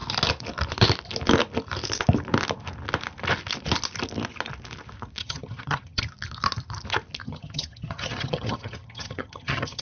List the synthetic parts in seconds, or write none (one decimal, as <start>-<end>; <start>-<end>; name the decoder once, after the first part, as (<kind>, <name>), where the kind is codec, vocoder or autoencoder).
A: 5.2-6.0 (vocoder, HiFi-GAN); 7.2-9.8